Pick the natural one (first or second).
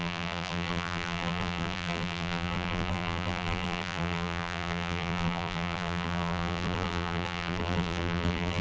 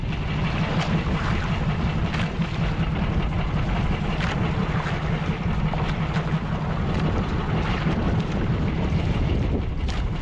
second